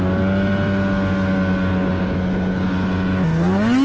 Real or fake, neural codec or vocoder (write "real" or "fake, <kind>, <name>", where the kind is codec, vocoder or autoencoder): real